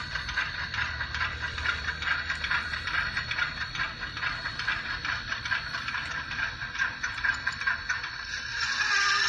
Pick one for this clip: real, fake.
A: fake